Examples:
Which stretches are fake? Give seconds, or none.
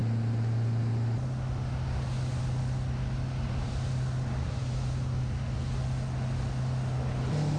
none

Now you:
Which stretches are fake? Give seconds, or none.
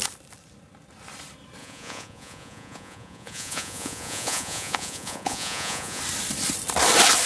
1.6-6.0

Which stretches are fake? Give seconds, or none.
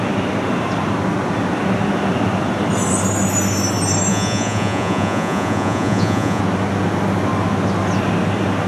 4.1-6.4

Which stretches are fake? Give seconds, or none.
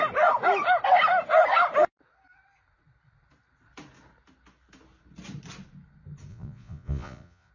6.3-7.5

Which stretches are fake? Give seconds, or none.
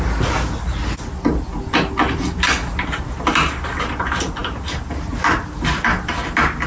none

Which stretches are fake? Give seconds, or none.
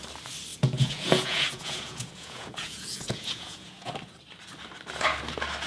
0.5-3.9